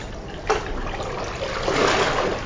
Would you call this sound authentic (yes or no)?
yes